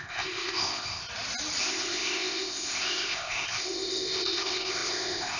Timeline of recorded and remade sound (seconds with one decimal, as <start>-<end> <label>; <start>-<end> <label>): 0.0-1.0 remade; 1.0-1.6 recorded; 1.6-5.4 remade